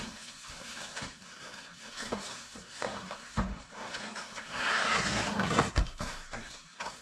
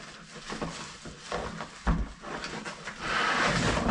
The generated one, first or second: first